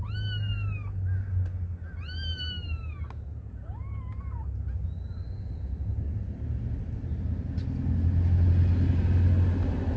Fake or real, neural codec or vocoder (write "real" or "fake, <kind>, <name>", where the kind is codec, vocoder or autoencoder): real